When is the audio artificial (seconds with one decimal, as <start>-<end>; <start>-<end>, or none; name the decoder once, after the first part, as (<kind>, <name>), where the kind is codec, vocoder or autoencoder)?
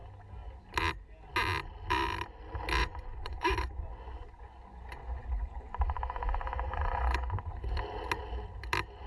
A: 2.8-7.4 (vocoder, Vocos)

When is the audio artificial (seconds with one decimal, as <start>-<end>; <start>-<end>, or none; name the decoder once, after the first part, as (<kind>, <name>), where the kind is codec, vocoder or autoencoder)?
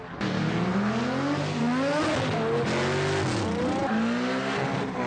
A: none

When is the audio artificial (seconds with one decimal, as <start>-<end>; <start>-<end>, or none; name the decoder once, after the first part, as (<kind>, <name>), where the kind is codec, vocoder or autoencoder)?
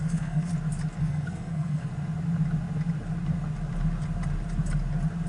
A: 0.0-0.5 (codec, SNAC); 1.0-1.9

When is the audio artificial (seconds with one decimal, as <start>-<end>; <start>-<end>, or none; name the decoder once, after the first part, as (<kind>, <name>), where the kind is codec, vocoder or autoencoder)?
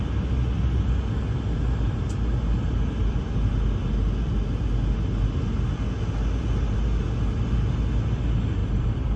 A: 3.0-3.8 (vocoder, BigVGAN v2); 8.6-9.2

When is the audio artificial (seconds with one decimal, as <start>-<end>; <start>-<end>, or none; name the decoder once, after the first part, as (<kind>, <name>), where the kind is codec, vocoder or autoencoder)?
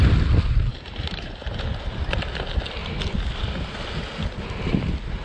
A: 0.7-1.7 (vocoder, BigVGAN v2)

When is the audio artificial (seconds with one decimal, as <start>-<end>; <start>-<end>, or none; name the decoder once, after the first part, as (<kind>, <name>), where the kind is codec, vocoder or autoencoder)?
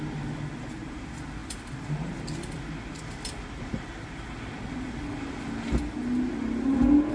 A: none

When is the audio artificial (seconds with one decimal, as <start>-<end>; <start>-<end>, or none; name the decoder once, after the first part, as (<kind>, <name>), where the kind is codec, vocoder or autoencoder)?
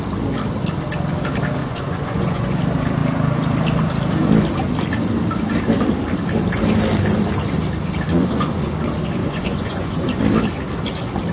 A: 1.6-2.6 (vocoder, Vocos); 8.1-8.7; 9.2-10.2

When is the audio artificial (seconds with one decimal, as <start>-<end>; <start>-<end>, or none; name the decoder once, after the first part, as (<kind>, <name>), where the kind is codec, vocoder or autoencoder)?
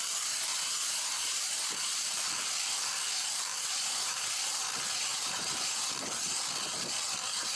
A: 0.5-2.3 (vocoder, BigVGAN v2); 3.5-4.6; 5.1-5.8